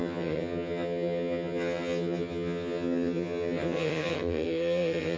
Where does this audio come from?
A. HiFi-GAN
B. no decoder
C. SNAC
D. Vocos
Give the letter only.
A